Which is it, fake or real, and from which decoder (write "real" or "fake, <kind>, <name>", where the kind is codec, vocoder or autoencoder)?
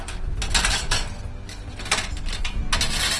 real